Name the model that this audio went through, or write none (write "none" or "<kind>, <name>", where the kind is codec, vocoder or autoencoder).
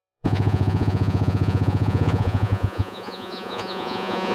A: vocoder, Vocos